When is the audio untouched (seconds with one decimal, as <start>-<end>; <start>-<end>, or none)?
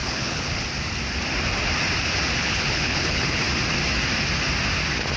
0.6-2.4; 3.4-5.2